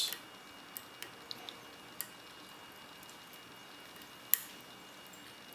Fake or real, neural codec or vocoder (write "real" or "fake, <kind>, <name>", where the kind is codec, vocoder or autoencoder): real